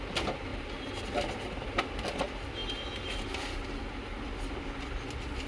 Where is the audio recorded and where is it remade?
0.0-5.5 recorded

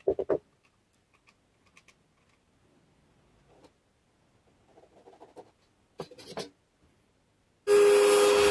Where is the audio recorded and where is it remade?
0.0-8.5 recorded

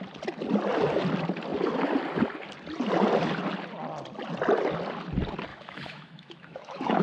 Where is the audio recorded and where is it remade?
0.0-5.5 recorded; 5.5-7.0 remade

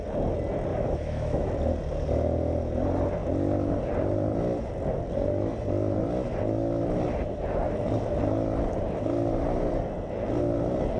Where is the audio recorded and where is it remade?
0.0-0.7 recorded; 0.7-1.5 remade; 1.5-11.0 recorded